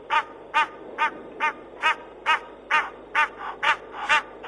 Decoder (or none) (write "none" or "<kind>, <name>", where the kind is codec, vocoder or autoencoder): none